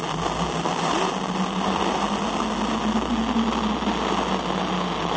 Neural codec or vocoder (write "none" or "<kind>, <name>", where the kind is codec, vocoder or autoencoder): none